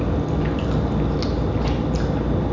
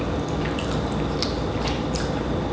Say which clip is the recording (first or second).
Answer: first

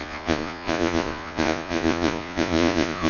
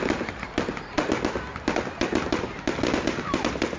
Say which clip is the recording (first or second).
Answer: second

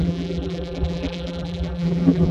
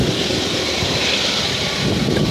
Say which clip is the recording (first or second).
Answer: second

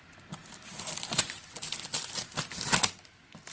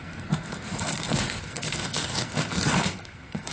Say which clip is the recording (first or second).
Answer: first